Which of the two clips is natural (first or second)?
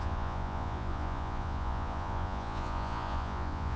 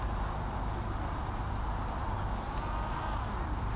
second